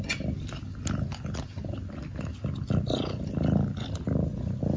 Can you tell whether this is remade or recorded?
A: recorded